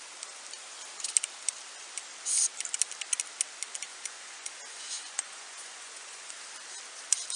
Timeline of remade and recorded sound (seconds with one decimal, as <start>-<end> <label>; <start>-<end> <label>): 0.0-3.9 recorded; 3.9-6.3 remade; 6.3-7.4 recorded